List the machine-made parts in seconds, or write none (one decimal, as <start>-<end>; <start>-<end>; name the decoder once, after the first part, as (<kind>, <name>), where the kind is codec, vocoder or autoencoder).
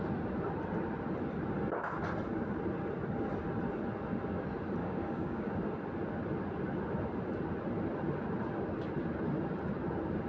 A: 4.8-5.6 (codec, DAC)